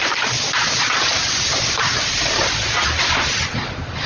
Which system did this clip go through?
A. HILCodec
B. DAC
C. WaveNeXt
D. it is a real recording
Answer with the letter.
D